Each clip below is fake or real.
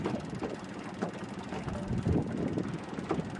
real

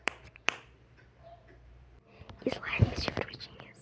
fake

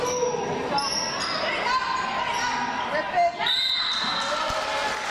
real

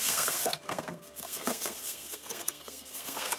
fake